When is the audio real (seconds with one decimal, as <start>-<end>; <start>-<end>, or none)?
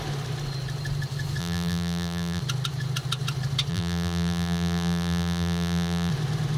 0.0-1.4; 2.4-3.7; 6.1-6.6